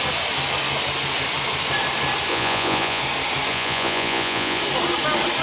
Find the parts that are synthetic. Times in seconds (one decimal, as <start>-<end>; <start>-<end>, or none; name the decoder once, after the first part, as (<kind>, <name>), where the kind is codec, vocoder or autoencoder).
2.3-3.0 (vocoder, Vocos); 3.5-4.6